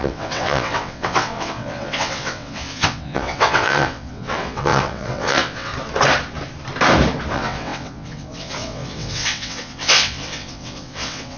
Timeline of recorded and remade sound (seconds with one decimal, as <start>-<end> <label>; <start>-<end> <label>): 0.0-5.7 remade; 5.7-7.3 recorded; 7.3-11.4 remade